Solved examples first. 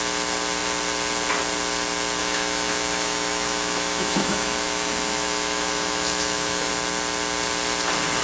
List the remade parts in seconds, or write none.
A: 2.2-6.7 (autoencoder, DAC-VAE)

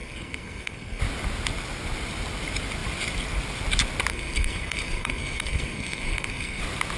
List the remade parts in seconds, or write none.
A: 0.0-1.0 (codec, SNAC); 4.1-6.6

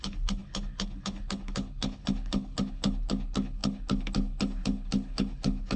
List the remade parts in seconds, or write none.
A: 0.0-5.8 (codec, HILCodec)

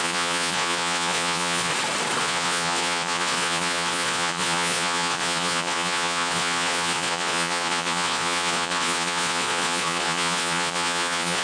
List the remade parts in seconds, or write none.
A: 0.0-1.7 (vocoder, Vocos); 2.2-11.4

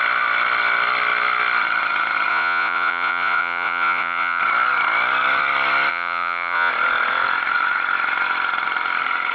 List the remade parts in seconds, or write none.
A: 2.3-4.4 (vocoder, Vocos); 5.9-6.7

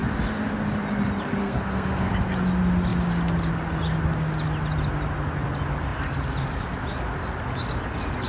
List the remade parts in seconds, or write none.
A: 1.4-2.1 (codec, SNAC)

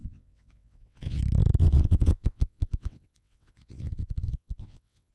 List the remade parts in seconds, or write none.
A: 0.0-1.2 (vocoder, WaveNeXt); 1.6-5.1